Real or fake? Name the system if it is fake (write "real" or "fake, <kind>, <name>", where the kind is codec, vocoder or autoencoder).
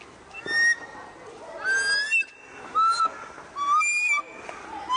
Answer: real